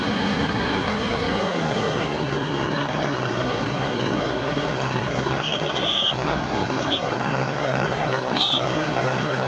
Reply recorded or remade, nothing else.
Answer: remade